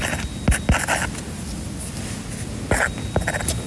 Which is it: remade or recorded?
recorded